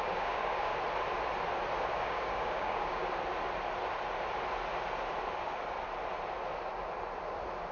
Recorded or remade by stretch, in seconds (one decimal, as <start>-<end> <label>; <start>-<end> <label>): 0.0-0.7 remade; 0.7-2.0 recorded; 2.0-3.0 remade; 3.0-7.7 recorded